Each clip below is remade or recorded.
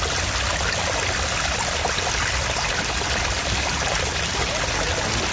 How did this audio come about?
recorded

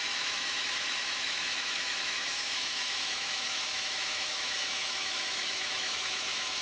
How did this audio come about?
remade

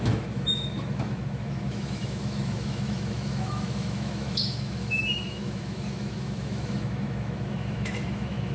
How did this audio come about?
remade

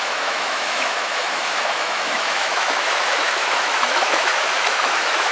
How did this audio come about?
remade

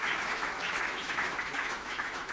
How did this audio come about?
remade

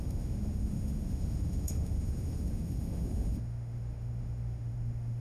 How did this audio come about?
remade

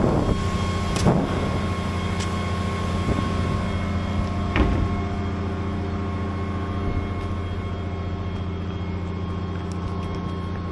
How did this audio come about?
recorded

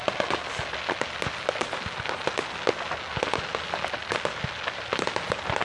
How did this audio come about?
recorded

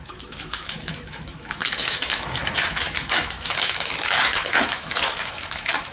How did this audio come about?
remade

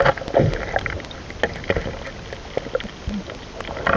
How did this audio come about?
recorded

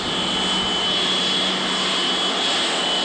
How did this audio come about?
recorded